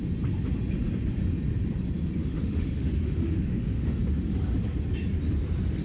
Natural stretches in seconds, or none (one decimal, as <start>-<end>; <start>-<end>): 0.0-2.2; 4.0-5.8